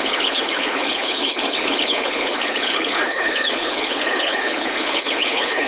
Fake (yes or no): yes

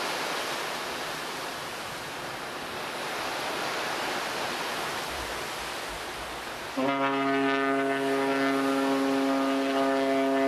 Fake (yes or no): no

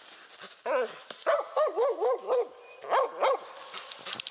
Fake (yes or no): no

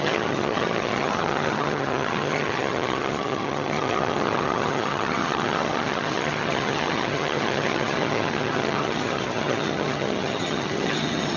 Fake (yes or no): yes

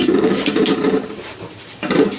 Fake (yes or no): yes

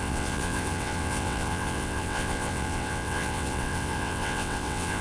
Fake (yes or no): yes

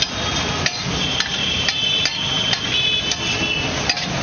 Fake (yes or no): no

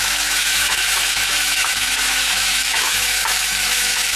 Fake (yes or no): yes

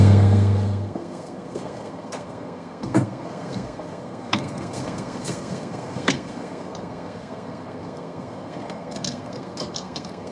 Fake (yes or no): yes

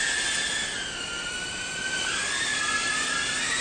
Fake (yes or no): no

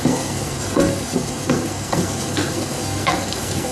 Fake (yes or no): yes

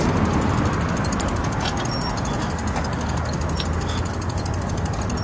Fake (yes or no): no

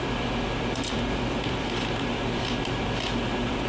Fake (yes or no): yes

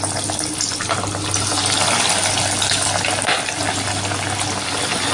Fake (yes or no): no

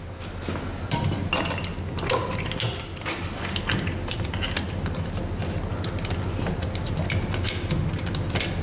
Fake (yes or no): no